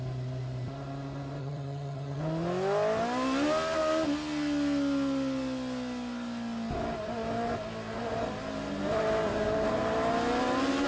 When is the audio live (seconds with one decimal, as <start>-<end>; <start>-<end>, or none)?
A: 0.0-1.4; 2.2-10.9